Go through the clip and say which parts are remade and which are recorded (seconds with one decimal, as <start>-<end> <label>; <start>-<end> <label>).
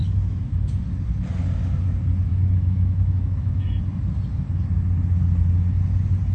0.0-0.8 remade; 0.8-2.3 recorded; 2.3-3.8 remade; 3.8-6.3 recorded